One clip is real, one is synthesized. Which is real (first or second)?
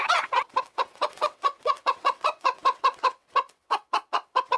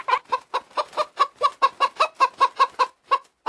second